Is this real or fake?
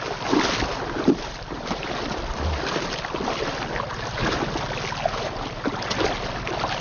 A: real